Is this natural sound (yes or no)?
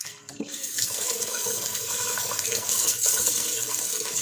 no